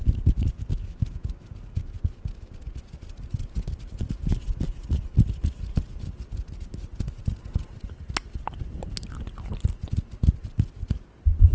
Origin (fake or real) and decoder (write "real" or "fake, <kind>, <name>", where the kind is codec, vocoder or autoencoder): real